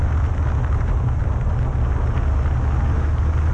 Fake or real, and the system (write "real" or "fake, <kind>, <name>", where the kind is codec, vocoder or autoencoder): real